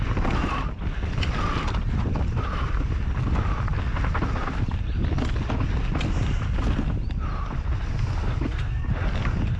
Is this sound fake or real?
real